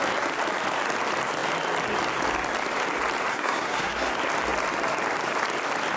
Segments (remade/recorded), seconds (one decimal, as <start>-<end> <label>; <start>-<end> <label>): 0.0-3.3 recorded; 3.3-4.1 remade; 4.1-6.0 recorded